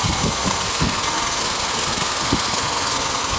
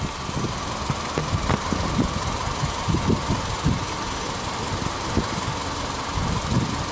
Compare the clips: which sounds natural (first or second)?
second